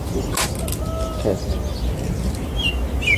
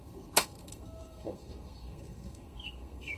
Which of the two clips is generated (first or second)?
second